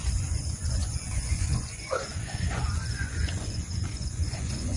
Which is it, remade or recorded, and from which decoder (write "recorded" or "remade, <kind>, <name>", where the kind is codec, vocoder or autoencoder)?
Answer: remade, vocoder, Vocos